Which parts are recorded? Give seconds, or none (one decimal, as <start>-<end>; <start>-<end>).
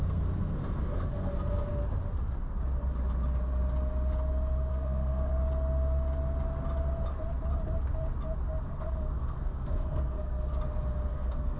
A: 1.8-4.7; 5.4-8.6; 10.5-11.1